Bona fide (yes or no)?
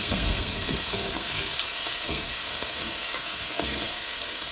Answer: no